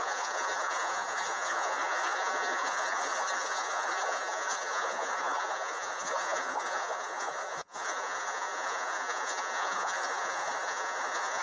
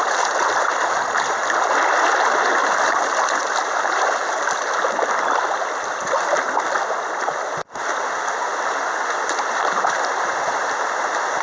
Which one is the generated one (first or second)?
first